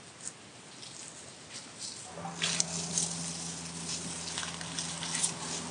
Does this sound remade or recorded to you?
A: recorded